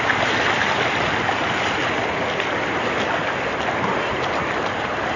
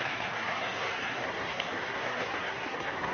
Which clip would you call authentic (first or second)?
first